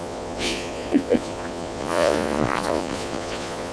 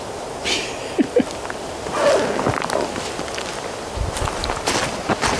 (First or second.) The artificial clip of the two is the first